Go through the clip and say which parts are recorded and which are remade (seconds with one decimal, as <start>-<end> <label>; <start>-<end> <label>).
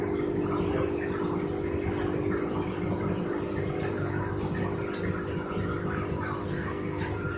0.0-6.4 recorded; 6.4-7.0 remade; 7.0-7.4 recorded